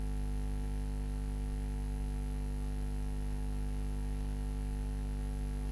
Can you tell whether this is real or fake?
real